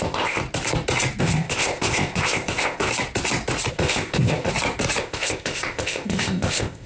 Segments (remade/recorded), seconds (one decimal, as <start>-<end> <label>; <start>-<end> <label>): 0.0-0.4 remade; 0.4-1.2 recorded; 1.2-2.9 remade; 2.9-3.7 recorded; 3.7-4.5 remade; 4.5-5.0 recorded; 5.0-6.9 remade